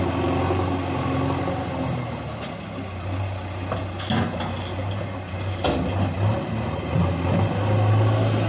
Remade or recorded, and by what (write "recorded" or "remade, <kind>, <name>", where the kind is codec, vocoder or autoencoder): recorded